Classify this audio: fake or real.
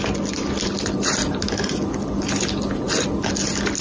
real